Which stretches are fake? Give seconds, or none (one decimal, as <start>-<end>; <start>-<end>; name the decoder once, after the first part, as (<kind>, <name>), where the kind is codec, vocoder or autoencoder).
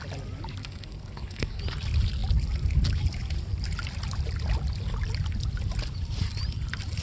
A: 0.6-1.6 (codec, SNAC)